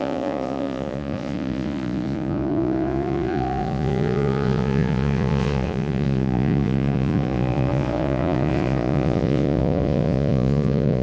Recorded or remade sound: remade